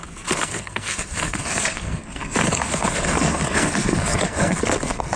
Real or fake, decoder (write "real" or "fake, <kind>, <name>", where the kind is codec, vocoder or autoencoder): fake, codec, SNAC